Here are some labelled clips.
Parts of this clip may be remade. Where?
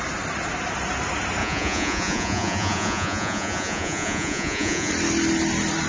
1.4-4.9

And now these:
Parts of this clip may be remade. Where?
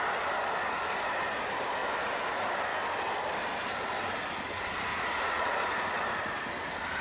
4.9-5.6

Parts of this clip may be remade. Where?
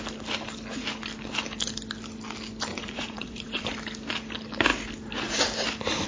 2.7-3.6